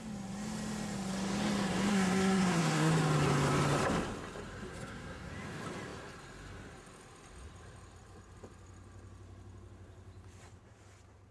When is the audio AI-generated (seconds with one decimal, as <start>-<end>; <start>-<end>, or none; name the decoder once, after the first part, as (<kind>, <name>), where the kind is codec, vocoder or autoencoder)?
1.9-2.9 (codec, SNAC); 4.7-5.3

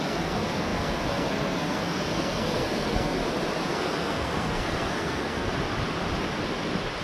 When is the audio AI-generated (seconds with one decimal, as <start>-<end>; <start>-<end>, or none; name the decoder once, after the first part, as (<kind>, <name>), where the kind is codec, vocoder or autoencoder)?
0.0-3.2 (codec, SNAC); 3.7-5.5

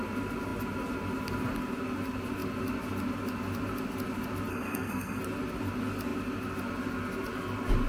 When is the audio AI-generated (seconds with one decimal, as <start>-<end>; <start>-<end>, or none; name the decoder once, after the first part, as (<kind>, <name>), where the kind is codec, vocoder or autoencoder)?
4.5-5.2 (codec, SNAC)